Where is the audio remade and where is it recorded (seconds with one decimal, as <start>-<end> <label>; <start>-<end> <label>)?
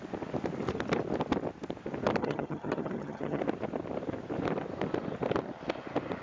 0.0-2.2 recorded; 2.2-3.4 remade; 3.4-6.2 recorded